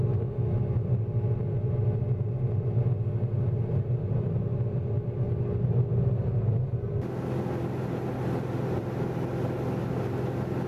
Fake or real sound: real